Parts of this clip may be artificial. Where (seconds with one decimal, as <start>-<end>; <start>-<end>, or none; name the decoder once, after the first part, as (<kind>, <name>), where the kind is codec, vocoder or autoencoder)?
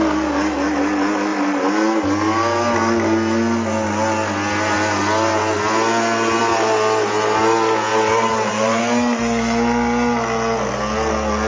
7.9-8.8 (vocoder, BigVGAN v2)